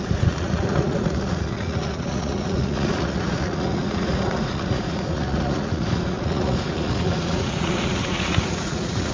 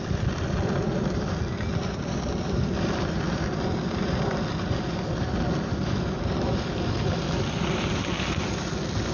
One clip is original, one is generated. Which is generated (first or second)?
first